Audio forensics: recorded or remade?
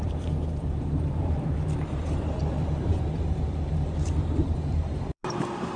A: remade